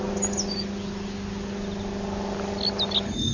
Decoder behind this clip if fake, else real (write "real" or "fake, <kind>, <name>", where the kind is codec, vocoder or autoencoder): real